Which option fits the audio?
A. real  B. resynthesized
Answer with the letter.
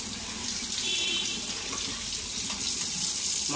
A